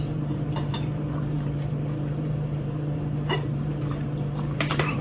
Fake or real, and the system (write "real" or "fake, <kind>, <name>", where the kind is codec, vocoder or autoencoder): fake, vocoder, BigVGAN v2